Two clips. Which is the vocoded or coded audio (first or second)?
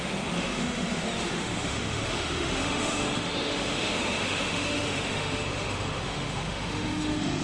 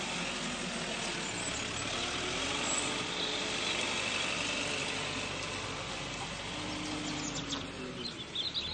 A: first